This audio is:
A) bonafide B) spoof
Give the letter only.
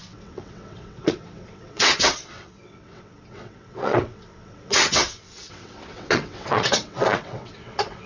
B